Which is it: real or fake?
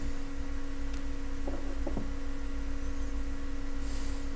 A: real